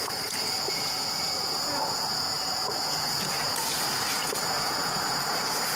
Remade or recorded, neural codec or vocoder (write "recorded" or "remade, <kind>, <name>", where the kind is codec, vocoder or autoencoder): remade, vocoder, Vocos